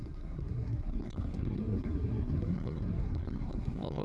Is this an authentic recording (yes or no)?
no